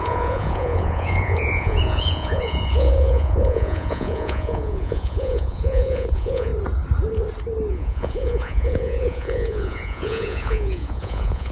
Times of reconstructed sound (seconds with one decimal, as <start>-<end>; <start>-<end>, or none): 0.0-6.5; 7.7-11.5